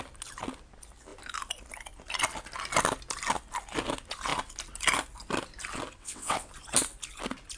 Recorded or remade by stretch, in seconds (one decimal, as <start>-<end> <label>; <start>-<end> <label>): 0.0-6.0 recorded; 6.0-6.5 remade; 6.5-7.6 recorded